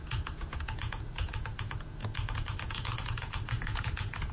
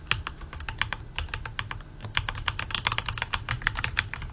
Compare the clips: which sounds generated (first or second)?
first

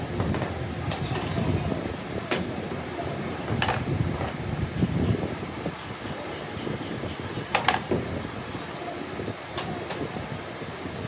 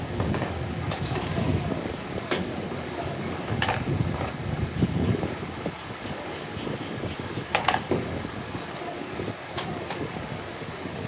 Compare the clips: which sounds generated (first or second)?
second